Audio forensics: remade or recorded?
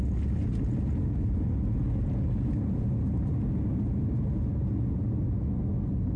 recorded